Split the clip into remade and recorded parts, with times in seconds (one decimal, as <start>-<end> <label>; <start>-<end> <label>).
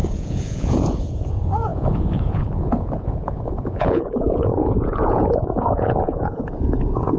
0.0-7.2 remade